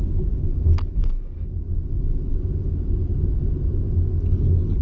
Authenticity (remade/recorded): recorded